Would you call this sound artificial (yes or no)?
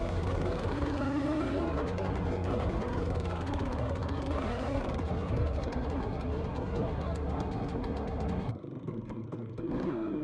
yes